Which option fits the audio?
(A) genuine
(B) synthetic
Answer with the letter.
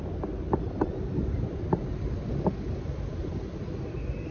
A